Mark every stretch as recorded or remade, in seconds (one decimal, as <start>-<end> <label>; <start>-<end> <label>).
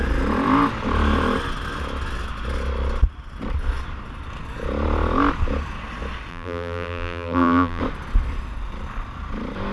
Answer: 0.0-6.3 recorded; 6.3-7.8 remade; 7.8-9.7 recorded